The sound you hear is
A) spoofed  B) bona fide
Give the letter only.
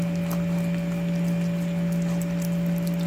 B